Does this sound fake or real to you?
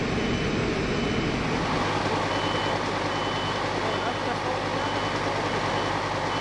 real